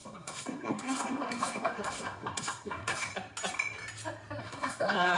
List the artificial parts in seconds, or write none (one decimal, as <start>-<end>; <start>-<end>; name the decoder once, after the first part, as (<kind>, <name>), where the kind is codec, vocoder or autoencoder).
0.0-3.1 (codec, SNAC); 4.4-5.2